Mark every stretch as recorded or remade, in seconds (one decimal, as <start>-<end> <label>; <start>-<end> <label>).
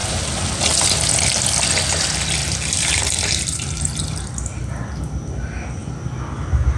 0.0-2.4 recorded; 2.4-4.0 remade; 4.0-6.8 recorded